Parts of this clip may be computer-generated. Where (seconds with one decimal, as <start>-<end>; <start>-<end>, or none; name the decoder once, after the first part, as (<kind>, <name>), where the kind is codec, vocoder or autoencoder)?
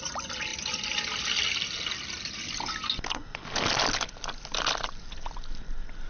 none